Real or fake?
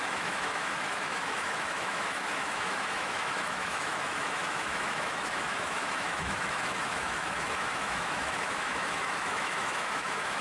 fake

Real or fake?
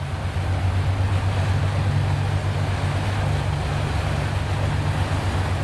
real